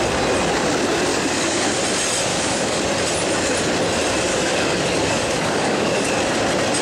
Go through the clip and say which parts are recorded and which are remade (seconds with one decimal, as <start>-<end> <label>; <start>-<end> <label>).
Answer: 0.0-1.1 recorded; 1.1-1.7 remade; 1.7-2.3 recorded; 2.3-2.8 remade; 2.8-4.3 recorded; 4.3-6.2 remade; 6.2-6.8 recorded